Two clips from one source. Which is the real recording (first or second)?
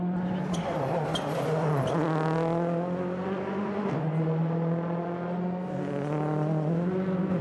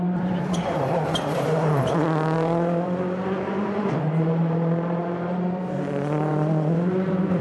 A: first